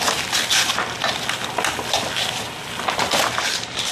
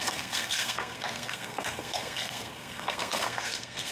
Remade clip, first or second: second